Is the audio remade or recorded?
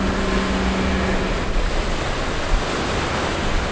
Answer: recorded